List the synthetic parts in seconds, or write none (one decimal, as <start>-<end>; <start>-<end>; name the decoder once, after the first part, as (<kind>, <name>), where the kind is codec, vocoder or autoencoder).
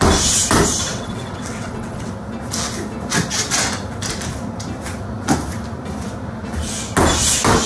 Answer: 0.9-2.1 (vocoder, WaveNeXt)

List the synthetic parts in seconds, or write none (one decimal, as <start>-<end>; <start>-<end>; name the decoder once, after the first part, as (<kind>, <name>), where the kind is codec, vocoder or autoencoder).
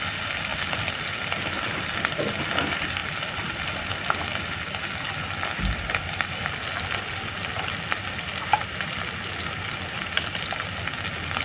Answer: none